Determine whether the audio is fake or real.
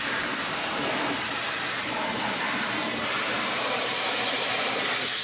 fake